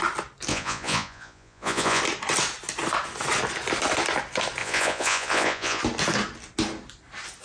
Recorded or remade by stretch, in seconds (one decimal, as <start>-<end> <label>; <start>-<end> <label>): 0.0-0.5 recorded; 0.5-2.0 remade; 2.0-4.6 recorded; 4.6-5.8 remade; 5.8-7.4 recorded